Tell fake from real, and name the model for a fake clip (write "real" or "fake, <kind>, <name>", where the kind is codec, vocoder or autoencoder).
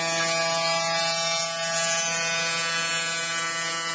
real